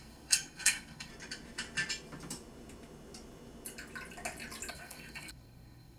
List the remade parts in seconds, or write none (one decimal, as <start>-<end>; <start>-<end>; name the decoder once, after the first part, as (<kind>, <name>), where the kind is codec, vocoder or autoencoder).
0.0-1.1 (codec, SNAC); 4.7-6.0